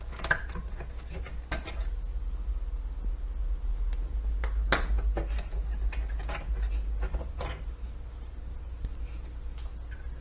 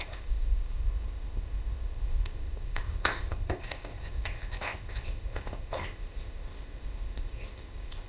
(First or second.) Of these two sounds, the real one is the first